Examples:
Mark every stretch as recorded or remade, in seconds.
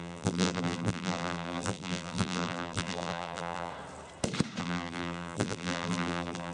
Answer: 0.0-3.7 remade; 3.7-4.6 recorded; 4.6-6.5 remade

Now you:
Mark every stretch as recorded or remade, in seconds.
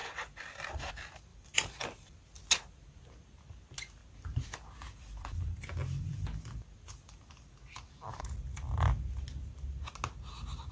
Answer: 0.0-0.9 remade; 0.9-1.3 recorded; 1.3-2.2 remade; 2.2-4.0 recorded; 4.0-7.9 remade; 7.9-10.7 recorded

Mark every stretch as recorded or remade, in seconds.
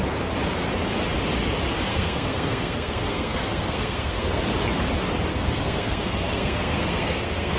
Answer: 0.0-1.9 recorded; 1.9-4.4 remade; 4.4-5.3 recorded; 5.3-7.6 remade